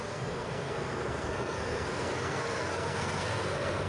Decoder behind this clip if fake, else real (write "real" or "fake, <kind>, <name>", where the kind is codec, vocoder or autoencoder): fake, codec, SNAC